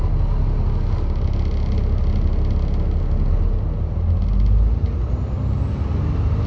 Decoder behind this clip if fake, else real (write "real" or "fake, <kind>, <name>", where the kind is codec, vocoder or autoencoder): real